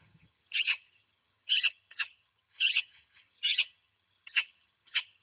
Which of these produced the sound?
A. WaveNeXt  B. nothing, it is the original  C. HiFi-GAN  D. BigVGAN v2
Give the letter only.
C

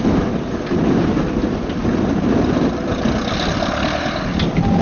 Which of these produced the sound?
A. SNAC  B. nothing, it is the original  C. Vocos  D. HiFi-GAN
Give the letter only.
B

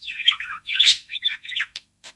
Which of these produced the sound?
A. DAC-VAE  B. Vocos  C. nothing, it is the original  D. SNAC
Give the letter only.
A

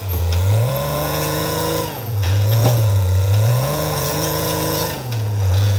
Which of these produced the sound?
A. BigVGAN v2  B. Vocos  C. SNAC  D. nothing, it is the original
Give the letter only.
B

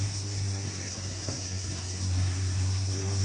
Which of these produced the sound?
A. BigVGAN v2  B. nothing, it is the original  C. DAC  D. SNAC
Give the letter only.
D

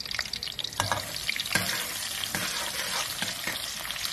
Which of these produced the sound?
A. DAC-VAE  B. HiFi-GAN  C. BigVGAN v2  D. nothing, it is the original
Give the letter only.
D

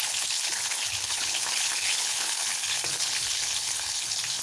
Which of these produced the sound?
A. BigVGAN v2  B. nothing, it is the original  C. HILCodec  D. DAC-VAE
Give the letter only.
C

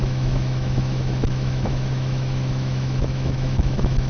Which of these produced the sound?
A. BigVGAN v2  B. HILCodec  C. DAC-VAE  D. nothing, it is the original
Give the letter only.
C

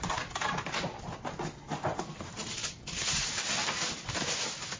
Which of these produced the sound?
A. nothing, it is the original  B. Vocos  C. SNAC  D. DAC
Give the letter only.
A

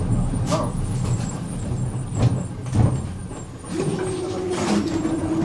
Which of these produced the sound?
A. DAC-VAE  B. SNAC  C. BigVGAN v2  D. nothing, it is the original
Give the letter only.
D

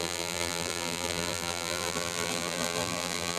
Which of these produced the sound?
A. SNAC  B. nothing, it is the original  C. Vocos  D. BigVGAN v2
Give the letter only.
D